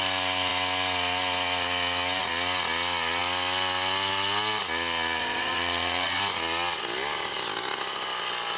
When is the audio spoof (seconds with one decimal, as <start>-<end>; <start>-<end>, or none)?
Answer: 5.2-6.2

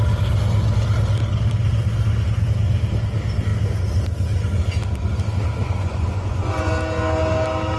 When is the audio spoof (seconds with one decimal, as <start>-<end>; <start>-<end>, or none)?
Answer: 5.6-6.7

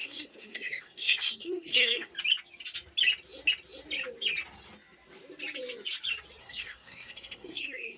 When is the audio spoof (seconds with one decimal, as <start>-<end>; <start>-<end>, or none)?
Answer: 0.0-2.1; 6.4-8.0

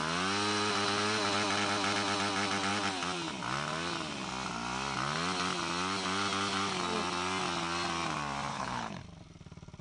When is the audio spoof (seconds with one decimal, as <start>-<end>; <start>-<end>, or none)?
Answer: 8.5-9.0

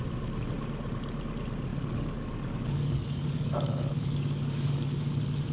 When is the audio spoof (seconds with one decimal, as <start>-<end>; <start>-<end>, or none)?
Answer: 1.7-5.0